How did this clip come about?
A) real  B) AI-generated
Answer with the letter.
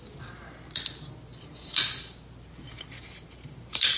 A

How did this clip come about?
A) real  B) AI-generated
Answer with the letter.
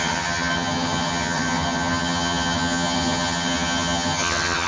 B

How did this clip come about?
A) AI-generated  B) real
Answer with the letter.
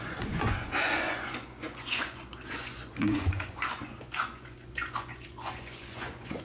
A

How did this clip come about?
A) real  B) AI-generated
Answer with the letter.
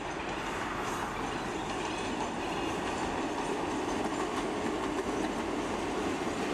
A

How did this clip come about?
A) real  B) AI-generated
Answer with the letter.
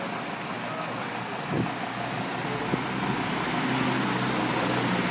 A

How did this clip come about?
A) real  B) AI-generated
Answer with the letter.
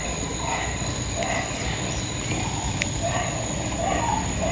A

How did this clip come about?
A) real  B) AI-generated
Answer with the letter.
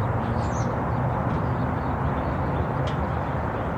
B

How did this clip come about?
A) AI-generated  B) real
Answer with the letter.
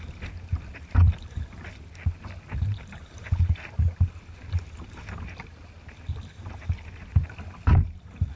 B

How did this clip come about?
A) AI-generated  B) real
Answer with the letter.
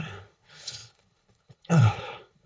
A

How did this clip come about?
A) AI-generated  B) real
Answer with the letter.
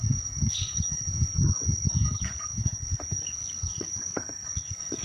A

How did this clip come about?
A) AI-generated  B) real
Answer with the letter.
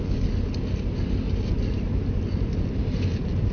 B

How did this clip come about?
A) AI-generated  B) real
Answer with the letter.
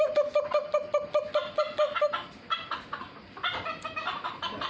B